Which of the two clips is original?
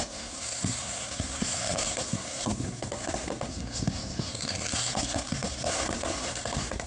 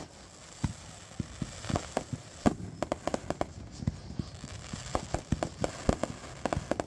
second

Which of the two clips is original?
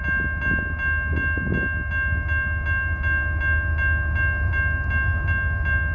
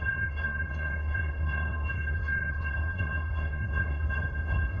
first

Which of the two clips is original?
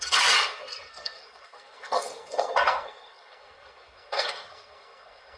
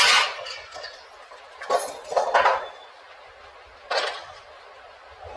second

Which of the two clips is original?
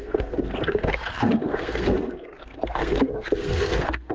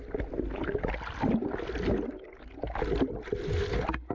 second